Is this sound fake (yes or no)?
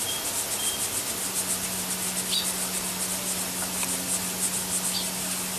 no